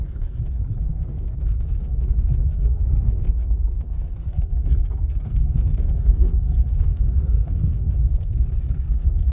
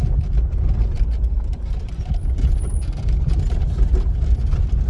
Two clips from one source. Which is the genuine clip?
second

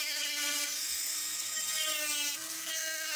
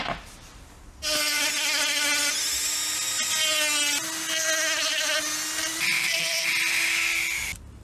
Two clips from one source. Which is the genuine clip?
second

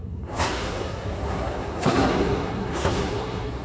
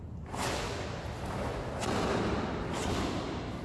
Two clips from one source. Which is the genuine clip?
second